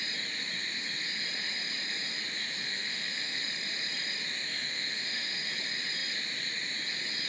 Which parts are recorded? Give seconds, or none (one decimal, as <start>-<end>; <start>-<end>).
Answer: 0.0-2.6; 3.5-4.5; 5.5-7.3